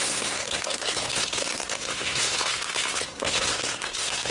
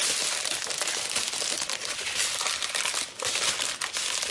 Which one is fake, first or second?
first